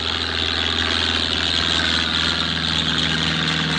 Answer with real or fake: real